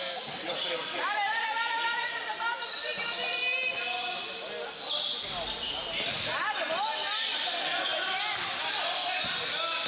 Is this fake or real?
real